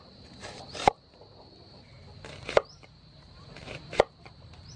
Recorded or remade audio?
remade